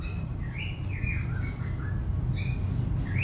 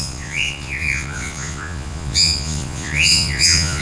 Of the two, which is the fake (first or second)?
second